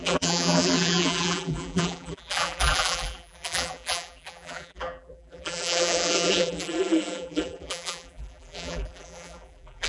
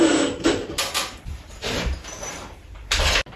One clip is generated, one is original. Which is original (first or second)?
second